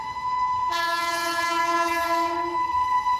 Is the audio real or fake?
fake